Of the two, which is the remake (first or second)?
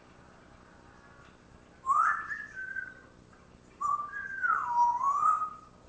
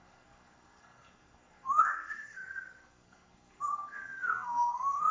second